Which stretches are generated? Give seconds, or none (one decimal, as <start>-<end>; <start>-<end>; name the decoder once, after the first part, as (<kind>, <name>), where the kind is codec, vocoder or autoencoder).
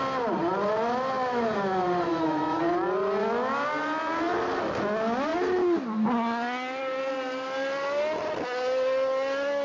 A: 2.1-2.6 (autoencoder, DAC-VAE)